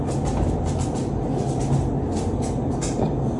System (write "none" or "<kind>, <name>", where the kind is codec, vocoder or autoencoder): none